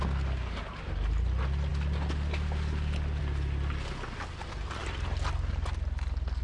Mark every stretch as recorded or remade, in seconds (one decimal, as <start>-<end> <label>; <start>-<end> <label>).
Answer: 0.0-6.4 recorded